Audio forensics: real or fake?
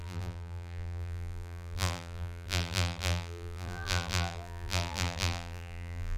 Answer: fake